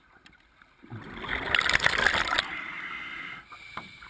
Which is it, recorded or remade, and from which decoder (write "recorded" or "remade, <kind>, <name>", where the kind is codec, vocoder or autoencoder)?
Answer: recorded